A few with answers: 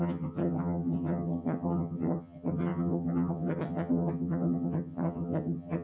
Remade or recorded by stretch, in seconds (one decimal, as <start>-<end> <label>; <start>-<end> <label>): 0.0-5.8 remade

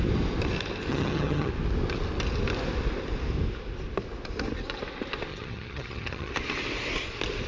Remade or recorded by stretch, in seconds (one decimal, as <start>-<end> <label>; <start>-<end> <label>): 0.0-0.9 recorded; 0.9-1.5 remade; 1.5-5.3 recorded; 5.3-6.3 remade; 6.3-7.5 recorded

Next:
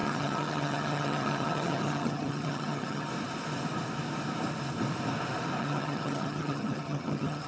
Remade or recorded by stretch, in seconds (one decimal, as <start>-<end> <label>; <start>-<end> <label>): 0.0-3.1 remade; 3.1-5.6 recorded; 5.6-7.5 remade